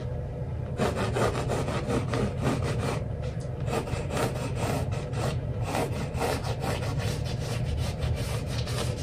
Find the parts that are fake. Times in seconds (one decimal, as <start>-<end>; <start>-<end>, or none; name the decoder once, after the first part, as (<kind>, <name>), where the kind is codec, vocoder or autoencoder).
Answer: 2.6-6.4 (vocoder, BigVGAN v2); 7.3-9.0